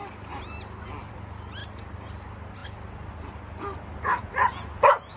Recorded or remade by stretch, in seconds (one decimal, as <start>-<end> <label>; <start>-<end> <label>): 0.0-5.2 recorded